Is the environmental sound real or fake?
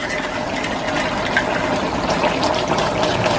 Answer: real